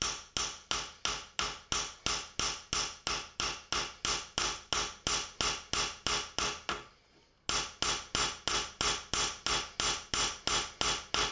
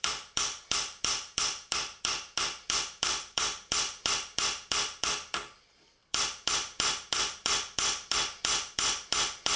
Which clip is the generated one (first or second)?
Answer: second